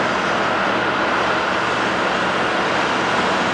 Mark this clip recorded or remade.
recorded